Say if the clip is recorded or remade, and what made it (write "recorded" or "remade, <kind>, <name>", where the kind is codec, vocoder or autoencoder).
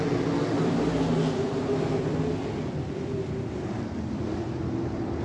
recorded